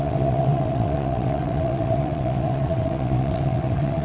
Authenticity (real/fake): fake